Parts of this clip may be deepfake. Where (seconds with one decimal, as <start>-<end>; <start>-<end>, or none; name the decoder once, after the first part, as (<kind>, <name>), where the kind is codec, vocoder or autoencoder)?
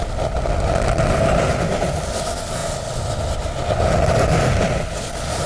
none